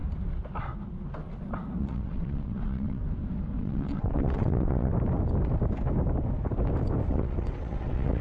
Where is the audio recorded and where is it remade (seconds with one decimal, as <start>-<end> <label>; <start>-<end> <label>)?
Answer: 0.0-1.8 recorded; 1.8-3.0 remade; 3.0-3.6 recorded; 3.6-4.9 remade; 4.9-7.1 recorded; 7.1-8.2 remade